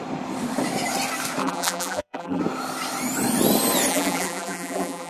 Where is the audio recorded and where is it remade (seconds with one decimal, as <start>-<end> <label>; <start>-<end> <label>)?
0.0-1.4 recorded; 1.4-2.4 remade; 2.4-3.9 recorded; 3.9-5.1 remade